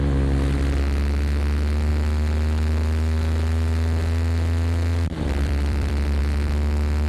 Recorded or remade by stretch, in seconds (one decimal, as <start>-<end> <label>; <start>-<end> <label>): 0.0-1.9 recorded; 1.9-6.2 remade; 6.2-7.1 recorded